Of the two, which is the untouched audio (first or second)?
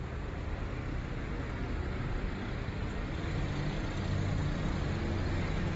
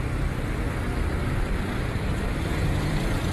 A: first